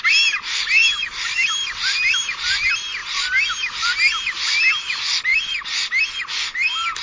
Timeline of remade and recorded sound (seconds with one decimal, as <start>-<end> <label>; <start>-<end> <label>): 0.0-0.8 recorded; 0.8-2.2 remade; 2.2-5.3 recorded; 5.3-6.2 remade; 6.2-7.0 recorded